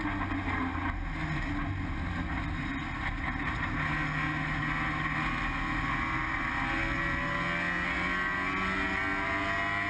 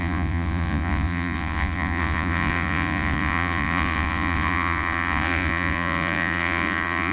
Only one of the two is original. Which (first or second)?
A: first